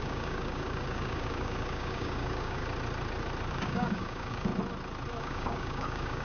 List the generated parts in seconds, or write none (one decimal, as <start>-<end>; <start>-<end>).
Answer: 0.0-2.6; 3.5-4.5; 5.2-6.2